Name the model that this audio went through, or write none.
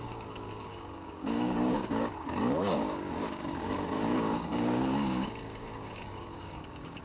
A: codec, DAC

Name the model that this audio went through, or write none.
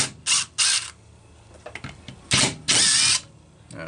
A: none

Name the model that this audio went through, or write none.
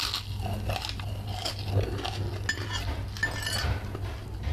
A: none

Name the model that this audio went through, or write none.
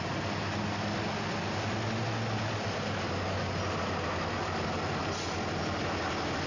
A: none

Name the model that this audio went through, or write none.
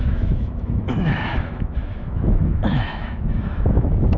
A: autoencoder, DAC-VAE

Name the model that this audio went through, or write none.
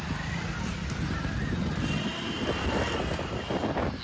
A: none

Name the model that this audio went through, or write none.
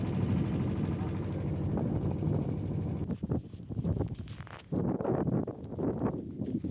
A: none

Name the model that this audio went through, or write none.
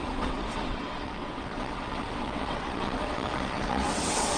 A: vocoder, WaveNeXt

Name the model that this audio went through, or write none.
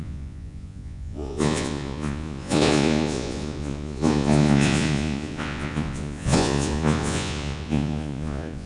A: vocoder, Vocos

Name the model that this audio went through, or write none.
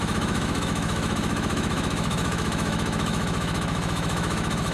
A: autoencoder, DAC-VAE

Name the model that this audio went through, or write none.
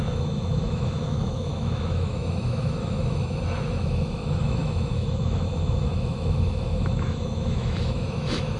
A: autoencoder, DAC-VAE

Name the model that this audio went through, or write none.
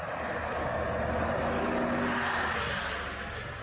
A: none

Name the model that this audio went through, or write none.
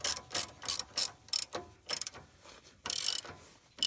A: none